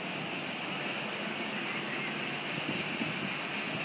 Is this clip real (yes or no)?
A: yes